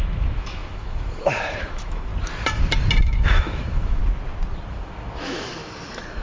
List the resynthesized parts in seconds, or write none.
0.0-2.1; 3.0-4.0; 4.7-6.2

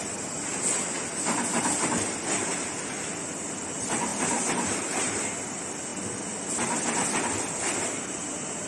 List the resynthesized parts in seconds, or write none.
4.1-5.2

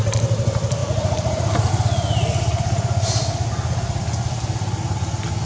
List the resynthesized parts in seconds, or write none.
0.8-1.7

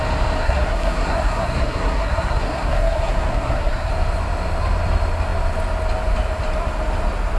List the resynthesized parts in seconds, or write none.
0.4-3.9

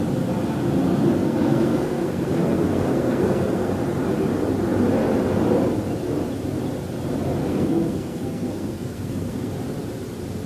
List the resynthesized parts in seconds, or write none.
1.2-3.7; 7.4-9.5

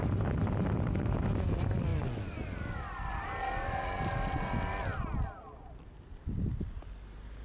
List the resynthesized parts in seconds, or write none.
none

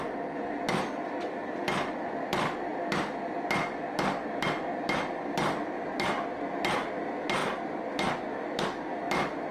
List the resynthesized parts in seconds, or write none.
7.4-7.9